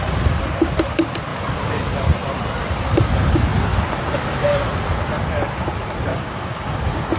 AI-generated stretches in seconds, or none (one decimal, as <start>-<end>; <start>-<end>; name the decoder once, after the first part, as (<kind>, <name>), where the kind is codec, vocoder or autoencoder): 6.1-6.8 (codec, DAC)